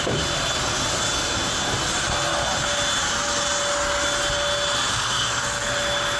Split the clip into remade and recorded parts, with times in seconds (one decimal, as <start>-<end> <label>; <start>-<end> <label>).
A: 0.0-4.9 recorded; 4.9-5.7 remade; 5.7-6.2 recorded